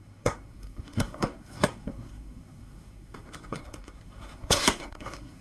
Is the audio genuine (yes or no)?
no